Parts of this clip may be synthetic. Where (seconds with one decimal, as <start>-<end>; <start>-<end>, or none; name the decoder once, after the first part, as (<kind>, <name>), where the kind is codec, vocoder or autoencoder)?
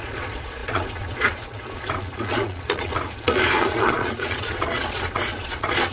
0.0-5.9 (vocoder, Vocos)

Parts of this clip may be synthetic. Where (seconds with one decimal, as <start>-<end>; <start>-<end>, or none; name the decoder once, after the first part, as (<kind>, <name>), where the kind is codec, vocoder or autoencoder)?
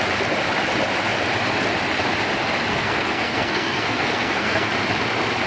2.7-4.7 (codec, SNAC)